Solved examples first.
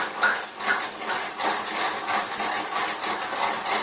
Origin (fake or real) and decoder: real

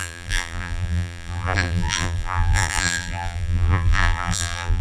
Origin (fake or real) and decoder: fake, vocoder, BigVGAN v2